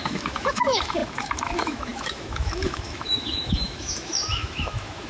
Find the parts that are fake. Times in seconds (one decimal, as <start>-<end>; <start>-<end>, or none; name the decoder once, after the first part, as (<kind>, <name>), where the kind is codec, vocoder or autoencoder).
0.0-5.1 (autoencoder, DAC-VAE)